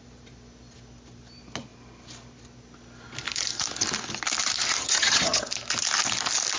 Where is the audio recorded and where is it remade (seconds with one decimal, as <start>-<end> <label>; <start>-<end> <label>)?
0.0-4.8 recorded; 4.8-5.4 remade; 5.4-6.6 recorded